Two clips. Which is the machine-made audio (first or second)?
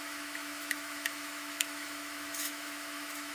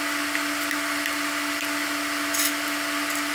first